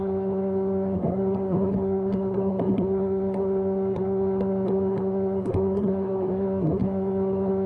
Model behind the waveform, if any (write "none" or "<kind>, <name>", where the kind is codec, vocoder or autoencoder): codec, SNAC